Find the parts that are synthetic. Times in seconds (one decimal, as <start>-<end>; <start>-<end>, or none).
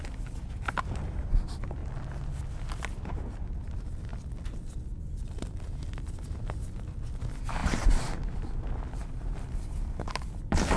1.8-2.4; 4.1-6.2; 7.6-8.6; 9.0-10.8